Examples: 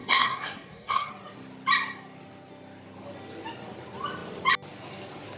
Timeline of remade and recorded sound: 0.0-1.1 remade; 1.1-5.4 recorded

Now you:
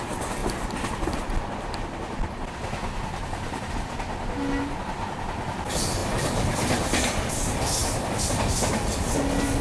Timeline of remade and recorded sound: 0.0-9.6 recorded

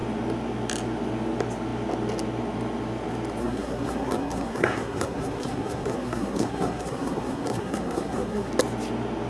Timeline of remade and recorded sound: 0.0-3.4 recorded; 3.4-8.5 remade; 8.5-9.3 recorded

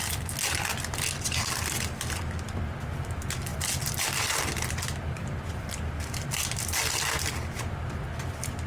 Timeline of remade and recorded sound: 0.0-8.7 recorded

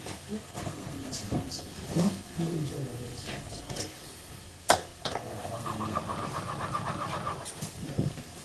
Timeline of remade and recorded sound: 0.0-6.0 remade; 6.0-7.6 recorded; 7.6-8.4 remade

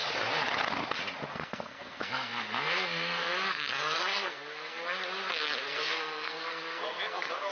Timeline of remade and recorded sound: 0.0-1.3 recorded; 1.3-4.8 remade; 4.8-5.6 recorded; 5.6-7.5 remade